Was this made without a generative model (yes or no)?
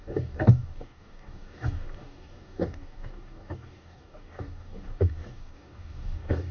no